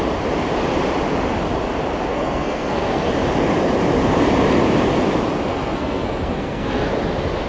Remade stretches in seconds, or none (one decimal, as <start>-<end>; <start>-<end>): 2.1-3.1; 5.5-6.9

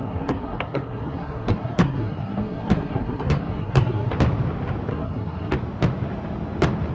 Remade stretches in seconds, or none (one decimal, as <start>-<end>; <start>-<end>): 0.0-4.1; 4.9-5.5

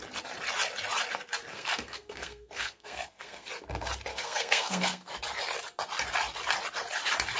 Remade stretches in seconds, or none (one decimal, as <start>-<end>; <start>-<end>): 1.5-3.5; 4.1-5.1

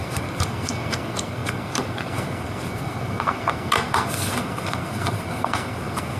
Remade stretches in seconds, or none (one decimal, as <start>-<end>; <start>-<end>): 0.0-6.2

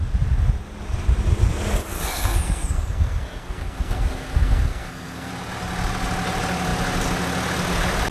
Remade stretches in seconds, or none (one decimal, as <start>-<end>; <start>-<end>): 1.9-5.3